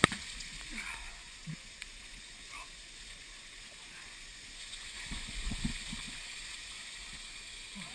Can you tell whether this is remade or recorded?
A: remade